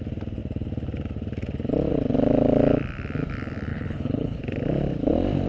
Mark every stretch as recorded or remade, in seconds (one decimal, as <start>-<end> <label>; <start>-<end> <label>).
0.0-3.7 recorded; 3.7-4.4 remade; 4.4-5.5 recorded